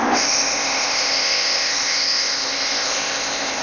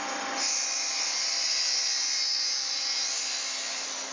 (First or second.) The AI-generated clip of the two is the first